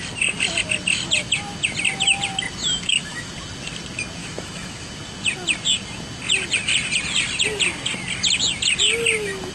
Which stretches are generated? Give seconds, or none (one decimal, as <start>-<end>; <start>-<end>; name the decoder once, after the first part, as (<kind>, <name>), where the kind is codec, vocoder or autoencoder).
2.6-3.3 (autoencoder, DAC-VAE); 4.2-4.9